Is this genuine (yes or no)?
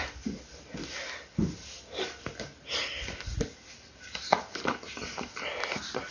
yes